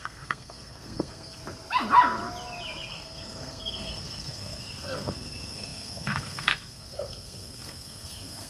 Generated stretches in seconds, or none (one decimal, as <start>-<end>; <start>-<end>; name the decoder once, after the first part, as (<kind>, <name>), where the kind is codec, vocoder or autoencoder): 0.0-1.4 (codec, SNAC); 2.9-8.5